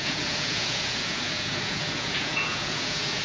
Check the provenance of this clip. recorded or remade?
remade